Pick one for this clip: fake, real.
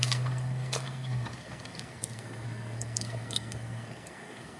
fake